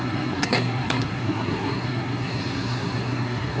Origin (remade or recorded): remade